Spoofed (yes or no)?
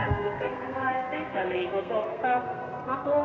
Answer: yes